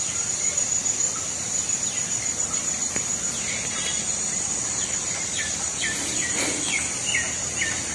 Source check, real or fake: real